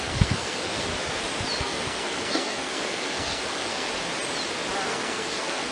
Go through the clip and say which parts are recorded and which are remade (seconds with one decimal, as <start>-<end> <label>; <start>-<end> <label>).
0.0-0.9 remade; 0.9-1.6 recorded; 1.6-3.9 remade; 3.9-4.9 recorded; 4.9-5.7 remade